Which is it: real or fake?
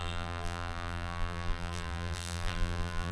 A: fake